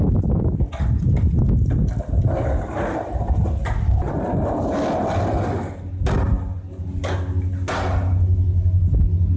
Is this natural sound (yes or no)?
yes